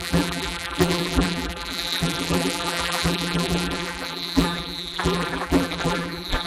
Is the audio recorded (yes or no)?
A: no